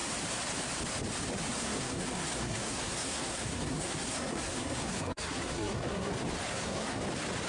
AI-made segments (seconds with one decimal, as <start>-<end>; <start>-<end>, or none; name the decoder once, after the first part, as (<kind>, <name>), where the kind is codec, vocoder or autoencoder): 1.6-6.1 (codec, SNAC); 6.5-7.0